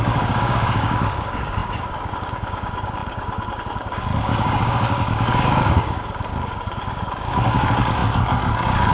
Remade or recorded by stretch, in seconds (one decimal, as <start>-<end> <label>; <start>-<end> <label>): 0.0-8.9 remade